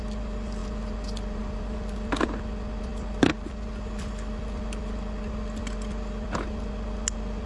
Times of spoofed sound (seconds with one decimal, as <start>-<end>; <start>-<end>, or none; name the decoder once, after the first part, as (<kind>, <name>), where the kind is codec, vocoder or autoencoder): none